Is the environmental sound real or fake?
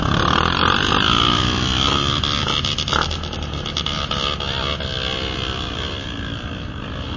real